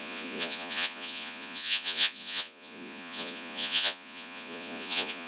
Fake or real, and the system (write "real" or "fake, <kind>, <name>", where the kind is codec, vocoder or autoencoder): fake, vocoder, Vocos